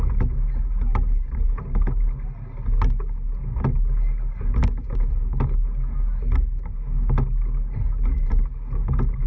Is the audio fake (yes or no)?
no